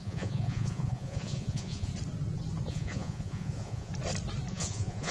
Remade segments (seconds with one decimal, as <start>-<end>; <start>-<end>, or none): 0.0-1.9; 2.7-3.9; 4.5-5.1